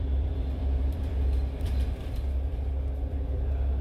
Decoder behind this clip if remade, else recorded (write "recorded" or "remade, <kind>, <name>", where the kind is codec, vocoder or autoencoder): remade, vocoder, BigVGAN v2